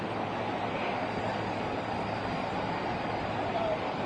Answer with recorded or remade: recorded